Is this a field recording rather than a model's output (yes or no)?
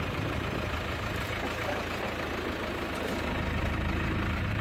yes